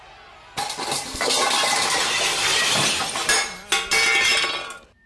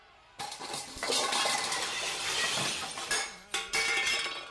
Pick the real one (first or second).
first